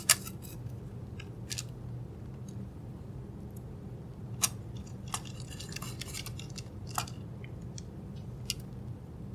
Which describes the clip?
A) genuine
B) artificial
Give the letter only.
A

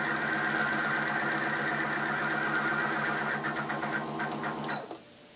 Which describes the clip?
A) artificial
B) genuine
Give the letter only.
B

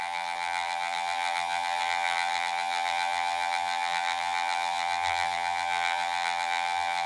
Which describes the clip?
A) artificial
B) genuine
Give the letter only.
A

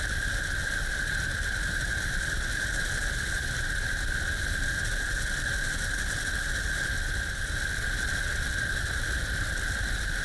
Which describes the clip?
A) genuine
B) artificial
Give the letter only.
A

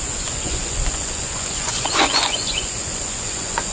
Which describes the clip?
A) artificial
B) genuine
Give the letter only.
A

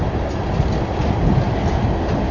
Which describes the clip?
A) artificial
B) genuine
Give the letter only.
B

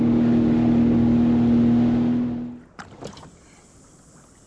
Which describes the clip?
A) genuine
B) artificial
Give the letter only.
A